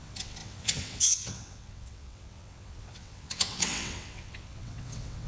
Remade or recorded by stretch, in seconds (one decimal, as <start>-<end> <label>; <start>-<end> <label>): 0.0-5.3 remade